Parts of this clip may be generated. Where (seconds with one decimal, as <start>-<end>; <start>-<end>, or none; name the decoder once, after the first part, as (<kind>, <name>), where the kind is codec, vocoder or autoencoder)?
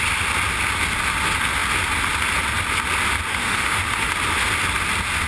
3.3-4.1 (autoencoder, DAC-VAE)